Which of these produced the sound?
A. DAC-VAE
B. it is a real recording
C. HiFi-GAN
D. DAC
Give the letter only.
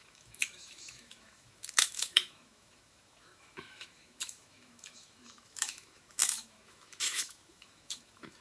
A